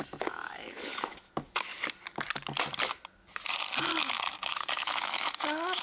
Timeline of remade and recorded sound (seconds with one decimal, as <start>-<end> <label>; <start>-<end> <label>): 0.0-1.7 remade; 1.7-4.0 recorded; 4.0-5.8 remade